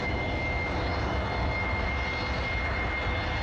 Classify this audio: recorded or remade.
recorded